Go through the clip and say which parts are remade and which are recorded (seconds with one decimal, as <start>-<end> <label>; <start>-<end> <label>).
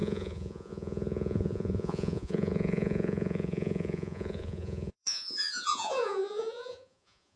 0.0-7.4 remade